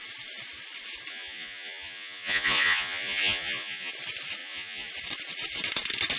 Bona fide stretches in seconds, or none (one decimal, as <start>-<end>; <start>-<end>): 0.0-1.1; 3.9-4.4; 4.9-6.2